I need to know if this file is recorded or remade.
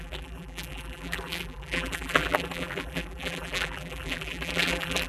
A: remade